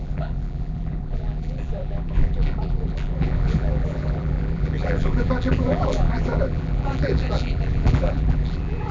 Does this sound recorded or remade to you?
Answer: remade